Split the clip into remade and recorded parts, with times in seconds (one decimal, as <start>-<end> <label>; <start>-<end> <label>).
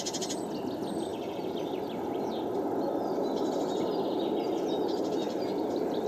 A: 0.0-5.2 recorded; 5.2-6.1 remade